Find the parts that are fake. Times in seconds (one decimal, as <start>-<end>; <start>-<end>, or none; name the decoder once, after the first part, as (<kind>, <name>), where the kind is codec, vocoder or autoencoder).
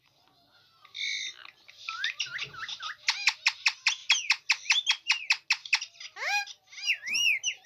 none